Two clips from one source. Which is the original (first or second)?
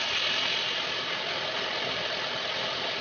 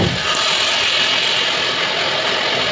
second